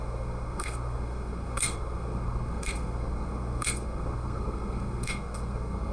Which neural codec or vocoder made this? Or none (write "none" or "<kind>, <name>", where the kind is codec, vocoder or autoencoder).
codec, SNAC